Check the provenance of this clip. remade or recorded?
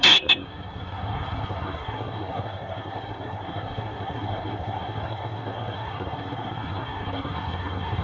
remade